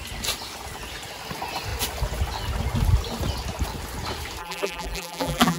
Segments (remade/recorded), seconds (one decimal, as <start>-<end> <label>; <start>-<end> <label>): 0.0-4.4 recorded; 4.4-5.6 remade